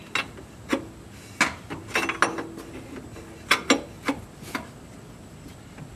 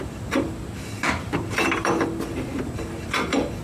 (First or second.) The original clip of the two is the first